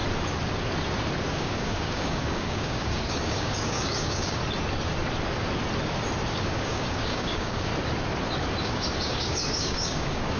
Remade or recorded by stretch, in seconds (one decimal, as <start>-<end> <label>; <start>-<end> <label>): 0.0-1.3 recorded; 1.3-4.4 remade; 4.4-6.3 recorded; 6.3-7.7 remade; 7.7-8.6 recorded; 8.6-10.4 remade